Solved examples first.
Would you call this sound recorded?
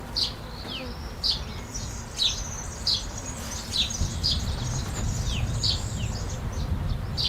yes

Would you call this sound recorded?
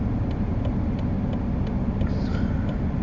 yes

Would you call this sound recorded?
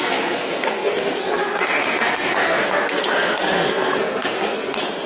no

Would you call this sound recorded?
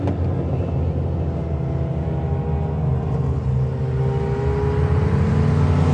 yes